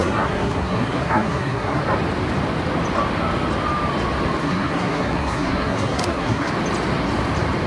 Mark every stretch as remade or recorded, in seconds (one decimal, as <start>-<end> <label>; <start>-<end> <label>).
0.0-1.8 remade; 1.8-4.4 recorded; 4.4-6.5 remade; 6.5-7.7 recorded